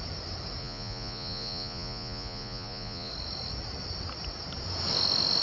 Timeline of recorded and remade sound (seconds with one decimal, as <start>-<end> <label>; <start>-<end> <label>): 0.0-0.6 recorded; 0.6-3.1 remade; 3.1-5.4 recorded